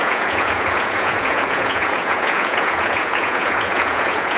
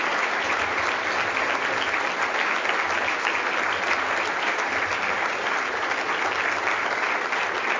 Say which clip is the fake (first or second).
first